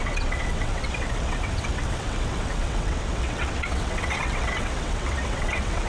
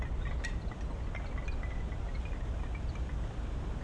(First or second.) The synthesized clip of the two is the first